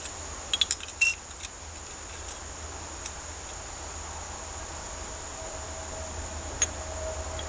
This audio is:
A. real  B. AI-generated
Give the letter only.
A